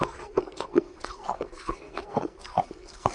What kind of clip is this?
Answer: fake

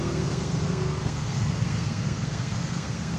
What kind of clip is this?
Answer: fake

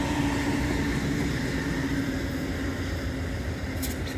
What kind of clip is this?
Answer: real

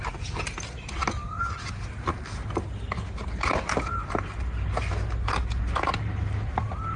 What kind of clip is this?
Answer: real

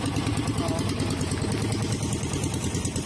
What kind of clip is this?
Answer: real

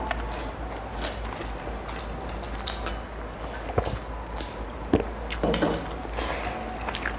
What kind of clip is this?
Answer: real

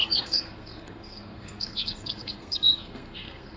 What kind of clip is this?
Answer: fake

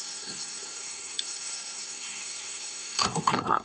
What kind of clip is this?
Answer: fake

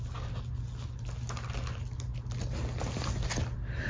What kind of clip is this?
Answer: real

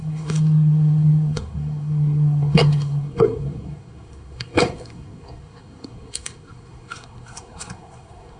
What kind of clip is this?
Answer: fake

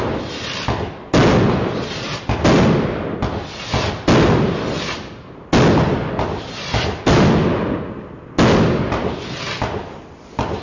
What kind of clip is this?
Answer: real